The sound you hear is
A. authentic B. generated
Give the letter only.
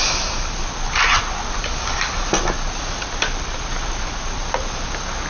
A